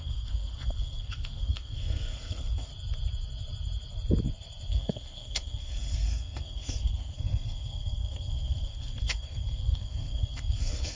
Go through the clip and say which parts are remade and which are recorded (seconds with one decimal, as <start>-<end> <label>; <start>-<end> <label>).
0.0-2.7 remade; 2.7-4.7 recorded; 4.7-11.0 remade